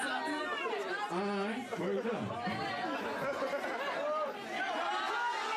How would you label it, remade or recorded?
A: recorded